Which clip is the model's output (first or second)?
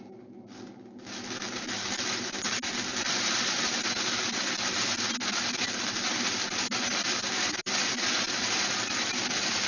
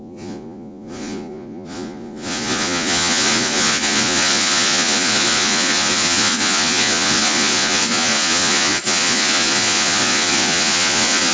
second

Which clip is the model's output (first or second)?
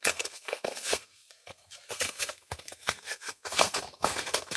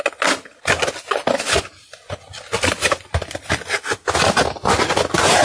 first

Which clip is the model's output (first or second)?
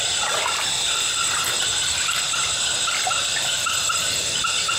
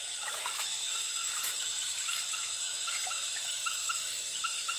second